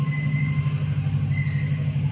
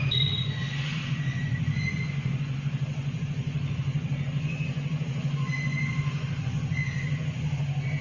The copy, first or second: second